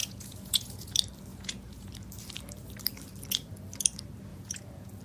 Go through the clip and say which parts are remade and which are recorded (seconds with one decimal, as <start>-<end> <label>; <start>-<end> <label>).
0.0-0.9 remade; 0.9-1.3 recorded; 1.3-1.9 remade; 1.9-4.3 recorded; 4.3-5.0 remade